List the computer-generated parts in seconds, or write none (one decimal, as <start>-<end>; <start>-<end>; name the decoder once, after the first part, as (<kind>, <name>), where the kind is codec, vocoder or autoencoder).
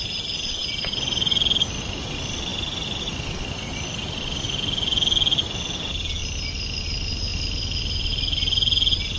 0.6-2.0 (vocoder, BigVGAN v2); 2.5-4.4; 6.2-6.8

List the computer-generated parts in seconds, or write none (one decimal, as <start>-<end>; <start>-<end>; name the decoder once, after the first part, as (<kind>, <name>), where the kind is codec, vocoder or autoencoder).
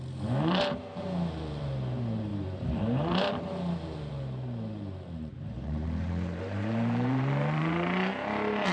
0.0-8.7 (vocoder, BigVGAN v2)